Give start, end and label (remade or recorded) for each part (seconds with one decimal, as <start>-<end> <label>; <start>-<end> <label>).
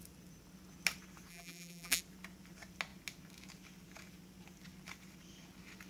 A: 0.0-1.3 recorded; 1.3-2.0 remade; 2.0-5.9 recorded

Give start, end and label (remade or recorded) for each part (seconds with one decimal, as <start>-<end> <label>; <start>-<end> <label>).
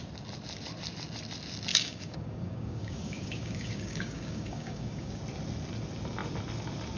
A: 0.0-1.7 recorded; 1.7-5.2 remade; 5.2-7.0 recorded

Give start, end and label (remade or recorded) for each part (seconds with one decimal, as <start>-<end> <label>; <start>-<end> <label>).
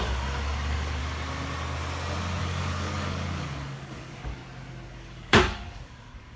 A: 0.0-1.0 remade; 1.0-2.4 recorded; 2.4-4.4 remade; 4.4-4.9 recorded; 4.9-6.4 remade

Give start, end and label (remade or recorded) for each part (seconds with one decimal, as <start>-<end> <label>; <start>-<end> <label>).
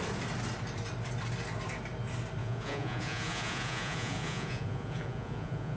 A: 0.0-2.4 recorded; 2.4-5.8 remade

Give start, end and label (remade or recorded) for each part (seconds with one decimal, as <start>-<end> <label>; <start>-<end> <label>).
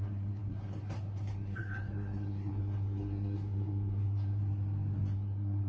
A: 0.0-4.4 remade; 4.4-5.1 recorded; 5.1-5.7 remade